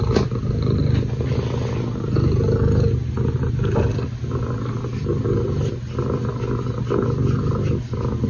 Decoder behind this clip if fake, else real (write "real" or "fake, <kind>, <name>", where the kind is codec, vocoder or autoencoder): real